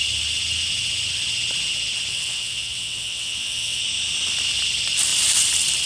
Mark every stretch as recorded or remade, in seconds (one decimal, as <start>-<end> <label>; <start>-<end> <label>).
0.0-2.1 recorded; 2.1-3.8 remade; 3.8-5.9 recorded